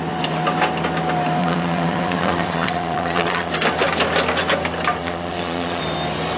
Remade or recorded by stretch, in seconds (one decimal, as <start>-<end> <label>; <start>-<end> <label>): 0.0-1.4 recorded; 1.4-3.5 remade; 3.5-5.0 recorded; 5.0-5.8 remade; 5.8-6.4 recorded